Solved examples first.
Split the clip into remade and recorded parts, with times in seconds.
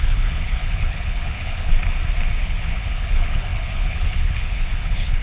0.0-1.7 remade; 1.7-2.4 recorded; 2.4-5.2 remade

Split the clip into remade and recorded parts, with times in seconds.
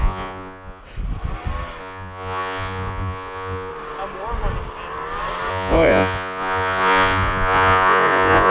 0.0-0.8 remade; 0.8-1.8 recorded; 1.8-3.7 remade; 3.7-5.5 recorded; 5.5-8.5 remade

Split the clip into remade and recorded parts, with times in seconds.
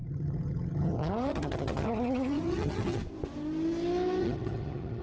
0.0-3.0 remade; 3.0-4.2 recorded; 4.2-5.0 remade